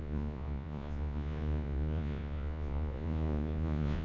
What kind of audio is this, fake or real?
fake